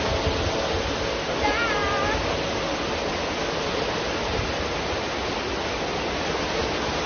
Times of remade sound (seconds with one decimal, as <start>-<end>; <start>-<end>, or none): none